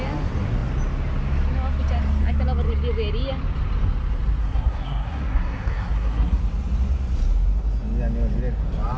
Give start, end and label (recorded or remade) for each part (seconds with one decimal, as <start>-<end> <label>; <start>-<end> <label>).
0.0-4.4 recorded; 4.4-6.4 remade; 6.4-9.0 recorded